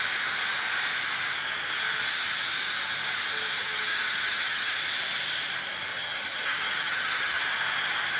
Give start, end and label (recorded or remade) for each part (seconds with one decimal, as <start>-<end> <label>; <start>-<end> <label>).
0.0-3.6 recorded; 3.6-4.8 remade; 4.8-5.9 recorded; 5.9-7.4 remade; 7.4-8.2 recorded

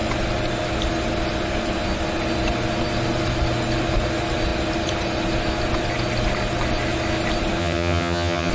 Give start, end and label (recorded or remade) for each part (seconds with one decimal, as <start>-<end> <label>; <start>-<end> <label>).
0.0-7.6 recorded; 7.6-8.5 remade

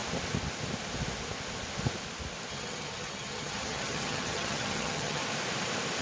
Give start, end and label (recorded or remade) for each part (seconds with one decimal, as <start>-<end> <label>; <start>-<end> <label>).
0.0-2.5 recorded; 2.5-5.2 remade; 5.2-6.0 recorded

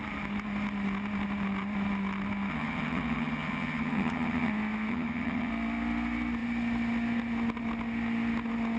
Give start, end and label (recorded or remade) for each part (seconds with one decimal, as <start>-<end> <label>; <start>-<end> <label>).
0.0-2.5 recorded; 2.5-4.5 remade; 4.5-4.9 recorded; 4.9-5.5 remade; 5.5-8.8 recorded

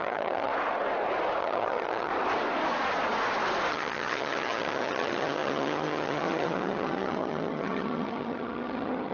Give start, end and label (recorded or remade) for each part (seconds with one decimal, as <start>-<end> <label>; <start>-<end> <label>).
0.0-0.5 remade; 0.5-1.4 recorded; 1.4-2.1 remade; 2.1-3.7 recorded; 3.7-9.1 remade

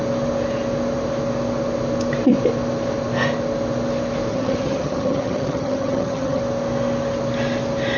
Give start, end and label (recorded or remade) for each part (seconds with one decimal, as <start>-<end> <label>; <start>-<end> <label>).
0.0-4.3 recorded; 4.3-6.4 remade; 6.4-8.0 recorded